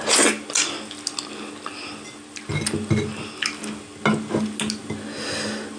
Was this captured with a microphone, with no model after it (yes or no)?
yes